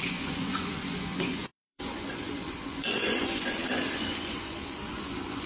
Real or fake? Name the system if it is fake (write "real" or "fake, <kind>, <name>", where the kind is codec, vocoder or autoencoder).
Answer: fake, vocoder, Vocos